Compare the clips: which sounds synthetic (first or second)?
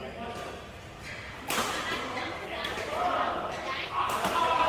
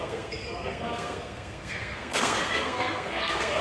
second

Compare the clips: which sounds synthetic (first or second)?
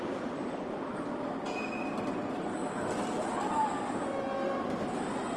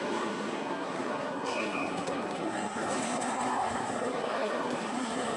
second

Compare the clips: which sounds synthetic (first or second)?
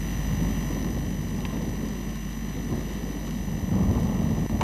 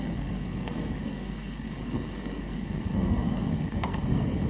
second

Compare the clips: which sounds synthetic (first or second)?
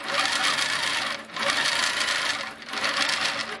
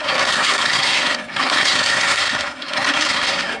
second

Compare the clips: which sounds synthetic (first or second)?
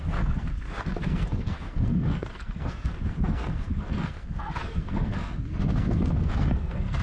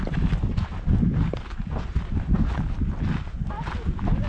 first